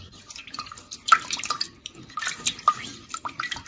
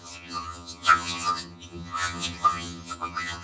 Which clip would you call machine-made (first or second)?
second